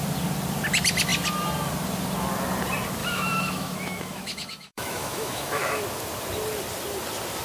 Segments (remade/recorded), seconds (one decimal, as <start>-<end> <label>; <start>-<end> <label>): 0.0-3.0 recorded; 3.0-5.8 remade; 5.8-7.4 recorded